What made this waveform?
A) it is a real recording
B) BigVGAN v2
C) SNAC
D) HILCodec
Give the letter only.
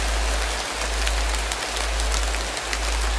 A